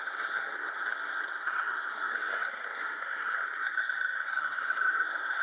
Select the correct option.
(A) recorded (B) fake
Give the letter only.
B